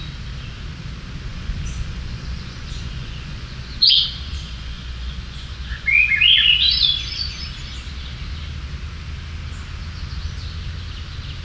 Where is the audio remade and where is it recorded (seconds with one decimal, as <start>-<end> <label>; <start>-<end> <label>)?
0.0-1.3 recorded; 1.3-3.9 remade; 3.9-4.3 recorded; 4.3-7.4 remade; 7.4-11.4 recorded